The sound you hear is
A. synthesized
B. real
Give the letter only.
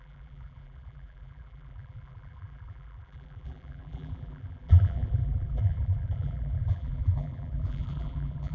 A